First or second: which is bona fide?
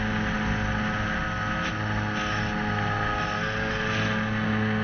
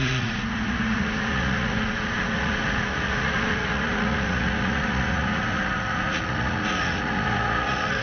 first